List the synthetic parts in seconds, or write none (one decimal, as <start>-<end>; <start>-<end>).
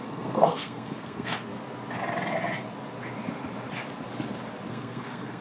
0.0-1.5; 4.7-5.4